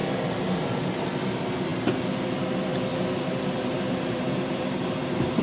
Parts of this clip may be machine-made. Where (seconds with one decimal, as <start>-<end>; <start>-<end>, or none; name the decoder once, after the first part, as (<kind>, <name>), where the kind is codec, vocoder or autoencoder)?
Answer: 2.9-5.4 (vocoder, BigVGAN v2)